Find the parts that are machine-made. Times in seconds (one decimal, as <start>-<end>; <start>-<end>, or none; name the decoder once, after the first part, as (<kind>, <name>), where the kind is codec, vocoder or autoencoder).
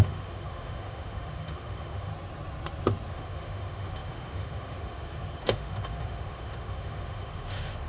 0.0-2.1 (autoencoder, DAC-VAE); 3.1-7.9